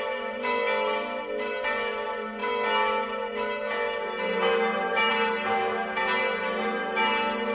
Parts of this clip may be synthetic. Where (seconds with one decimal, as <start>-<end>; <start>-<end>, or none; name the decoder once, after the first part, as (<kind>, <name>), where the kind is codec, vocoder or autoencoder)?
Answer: none